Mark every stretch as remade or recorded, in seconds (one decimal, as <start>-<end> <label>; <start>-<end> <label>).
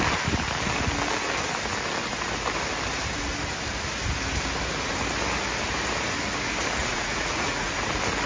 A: 0.0-6.8 recorded; 6.8-7.7 remade; 7.7-8.3 recorded